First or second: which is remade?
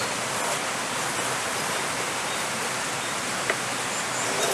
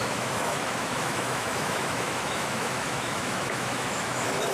second